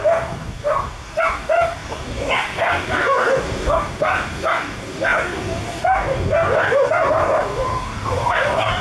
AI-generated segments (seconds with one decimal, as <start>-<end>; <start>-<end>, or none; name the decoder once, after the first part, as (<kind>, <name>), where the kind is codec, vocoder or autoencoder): 0.0-8.8 (codec, DAC)